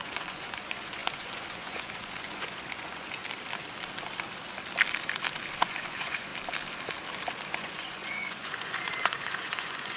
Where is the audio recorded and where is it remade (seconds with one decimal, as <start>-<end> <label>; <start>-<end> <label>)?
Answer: 0.0-3.2 remade; 3.2-5.6 recorded; 5.6-6.3 remade; 6.3-7.5 recorded; 7.5-10.0 remade